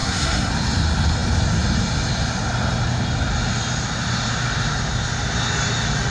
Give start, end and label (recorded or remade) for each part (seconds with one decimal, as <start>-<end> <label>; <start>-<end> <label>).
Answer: 0.0-0.5 remade; 0.5-6.1 recorded